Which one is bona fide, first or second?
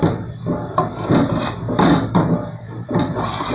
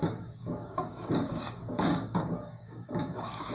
first